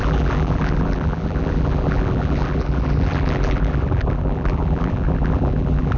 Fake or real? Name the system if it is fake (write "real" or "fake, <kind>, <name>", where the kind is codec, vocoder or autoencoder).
fake, vocoder, BigVGAN v2